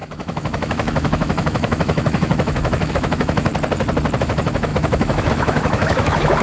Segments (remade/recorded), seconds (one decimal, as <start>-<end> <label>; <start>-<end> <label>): 0.0-3.5 remade; 3.5-4.2 recorded; 4.2-6.4 remade

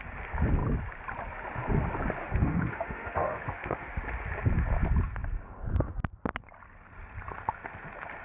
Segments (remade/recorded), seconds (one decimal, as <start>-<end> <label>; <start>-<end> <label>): 0.0-2.2 recorded; 2.2-4.0 remade; 4.0-8.2 recorded

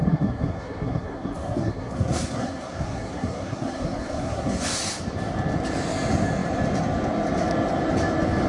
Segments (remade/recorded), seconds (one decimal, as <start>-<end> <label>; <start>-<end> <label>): 0.0-4.8 remade; 4.8-8.5 recorded

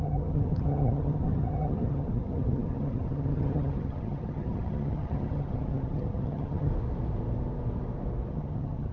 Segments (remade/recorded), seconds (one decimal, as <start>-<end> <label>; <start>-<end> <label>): 0.0-6.7 remade; 6.7-8.3 recorded; 8.3-8.9 remade

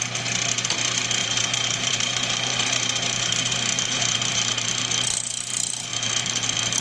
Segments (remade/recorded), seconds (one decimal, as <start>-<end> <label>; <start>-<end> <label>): 0.0-1.2 recorded; 1.2-5.3 remade; 5.3-5.9 recorded; 5.9-6.8 remade

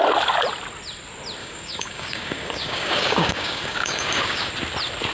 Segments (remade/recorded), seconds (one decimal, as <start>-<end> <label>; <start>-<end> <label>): 0.0-1.4 recorded; 1.4-4.5 remade; 4.5-5.1 recorded

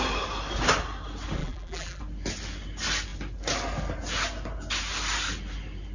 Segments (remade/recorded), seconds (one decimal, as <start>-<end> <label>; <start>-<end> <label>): 0.0-1.4 recorded; 1.4-2.0 remade; 2.0-5.9 recorded